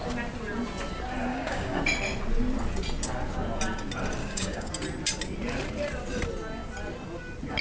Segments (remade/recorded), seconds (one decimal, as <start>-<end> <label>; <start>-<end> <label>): 0.0-1.3 recorded; 1.3-1.8 remade; 1.8-4.2 recorded; 4.2-4.7 remade; 4.7-7.6 recorded

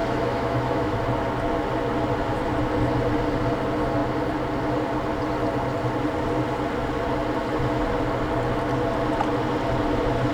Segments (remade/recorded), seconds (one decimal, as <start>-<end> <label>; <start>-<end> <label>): 0.0-1.0 remade; 1.0-10.3 recorded

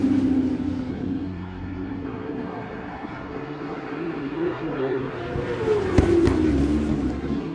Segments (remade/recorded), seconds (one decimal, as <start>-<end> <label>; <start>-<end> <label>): 0.0-0.9 recorded; 0.9-5.2 remade; 5.2-7.1 recorded; 7.1-7.5 remade

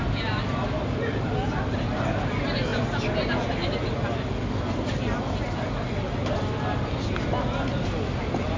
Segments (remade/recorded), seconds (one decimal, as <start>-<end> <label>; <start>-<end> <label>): 0.0-8.6 recorded

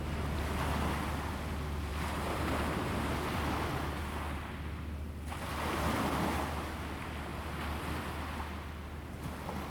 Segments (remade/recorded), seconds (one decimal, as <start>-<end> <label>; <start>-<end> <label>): 0.0-9.7 recorded

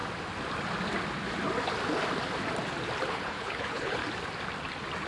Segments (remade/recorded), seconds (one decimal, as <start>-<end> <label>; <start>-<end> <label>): 0.0-3.1 recorded; 3.1-4.0 remade; 4.0-5.1 recorded

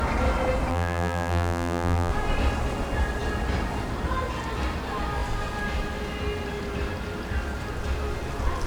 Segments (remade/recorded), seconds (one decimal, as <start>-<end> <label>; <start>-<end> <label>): 0.0-0.7 recorded; 0.7-2.1 remade; 2.1-8.7 recorded

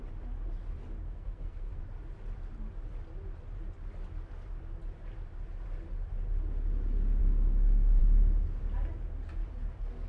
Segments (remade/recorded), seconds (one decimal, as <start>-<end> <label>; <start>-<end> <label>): 0.0-1.0 recorded; 1.0-1.8 remade; 1.8-7.2 recorded; 7.2-8.0 remade; 8.0-10.1 recorded